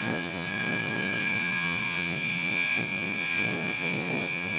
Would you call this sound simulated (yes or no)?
yes